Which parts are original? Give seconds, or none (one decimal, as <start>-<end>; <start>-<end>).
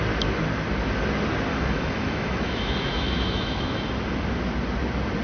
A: 0.0-1.5; 3.9-5.2